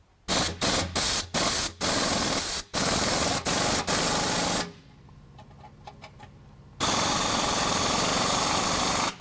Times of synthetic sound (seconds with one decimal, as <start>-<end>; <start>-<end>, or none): none